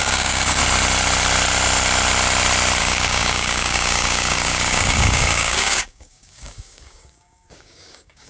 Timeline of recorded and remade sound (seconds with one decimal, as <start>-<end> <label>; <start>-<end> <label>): 0.0-0.6 remade; 0.6-2.8 recorded; 2.8-8.3 remade